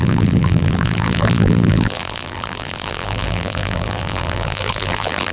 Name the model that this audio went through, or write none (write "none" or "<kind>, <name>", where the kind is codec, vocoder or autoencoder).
vocoder, BigVGAN v2